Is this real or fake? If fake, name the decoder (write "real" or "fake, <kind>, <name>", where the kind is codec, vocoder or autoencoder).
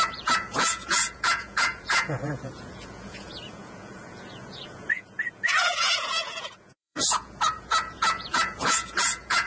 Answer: fake, vocoder, Vocos